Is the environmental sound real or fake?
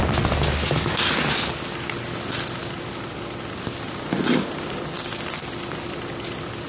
real